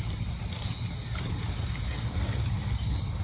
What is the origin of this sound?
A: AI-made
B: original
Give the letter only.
B